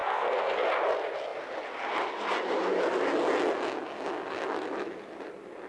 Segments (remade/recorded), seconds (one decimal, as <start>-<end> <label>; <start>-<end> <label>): 0.0-0.7 remade; 0.7-5.7 recorded